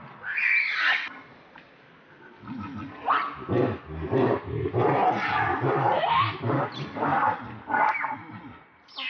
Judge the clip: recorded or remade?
recorded